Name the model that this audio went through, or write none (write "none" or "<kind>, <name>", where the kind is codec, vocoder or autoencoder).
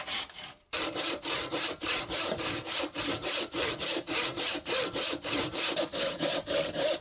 vocoder, BigVGAN v2